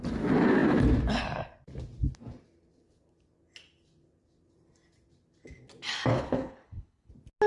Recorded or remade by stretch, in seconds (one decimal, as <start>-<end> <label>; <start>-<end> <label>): 0.0-6.1 recorded; 6.1-7.1 remade; 7.1-7.5 recorded